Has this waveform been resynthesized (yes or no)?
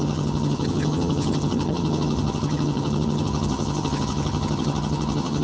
yes